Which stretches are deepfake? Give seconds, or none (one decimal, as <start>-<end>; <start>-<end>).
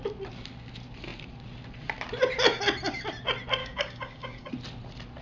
3.6-4.5